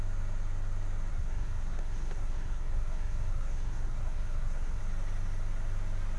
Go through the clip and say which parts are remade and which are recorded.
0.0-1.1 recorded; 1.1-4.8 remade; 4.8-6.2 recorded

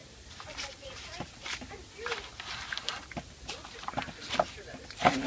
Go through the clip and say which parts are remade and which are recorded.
0.0-5.3 recorded

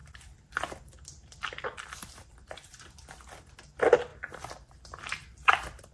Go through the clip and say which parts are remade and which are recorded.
0.0-5.9 recorded

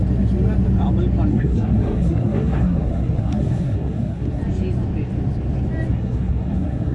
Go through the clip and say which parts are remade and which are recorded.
0.0-1.3 recorded; 1.3-4.4 remade; 4.4-5.9 recorded; 5.9-6.9 remade

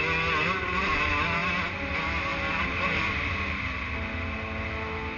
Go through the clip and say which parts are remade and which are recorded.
0.0-5.2 recorded

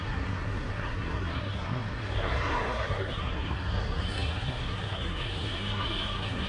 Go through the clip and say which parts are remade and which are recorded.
0.0-6.5 remade

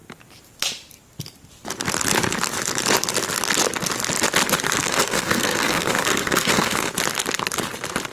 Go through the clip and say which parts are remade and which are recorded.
0.0-4.8 recorded; 4.8-6.9 remade; 6.9-8.1 recorded

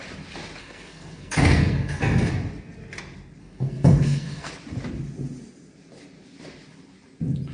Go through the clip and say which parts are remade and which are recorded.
0.0-0.6 recorded; 0.6-2.3 remade; 2.3-3.4 recorded; 3.4-4.5 remade; 4.5-7.5 recorded